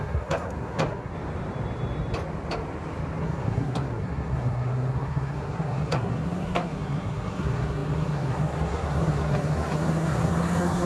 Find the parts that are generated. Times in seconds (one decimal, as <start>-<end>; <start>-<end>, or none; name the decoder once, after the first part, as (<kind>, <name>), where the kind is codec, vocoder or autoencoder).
0.0-1.1 (codec, SNAC); 3.2-10.9